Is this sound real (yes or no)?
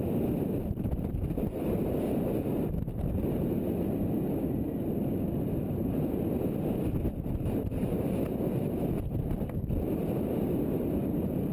no